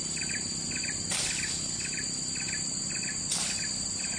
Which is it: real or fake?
real